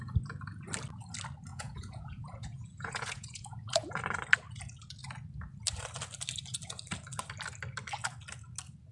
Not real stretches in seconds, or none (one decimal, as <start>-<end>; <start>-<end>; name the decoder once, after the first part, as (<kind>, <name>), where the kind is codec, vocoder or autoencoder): 1.5-3.9 (vocoder, Vocos)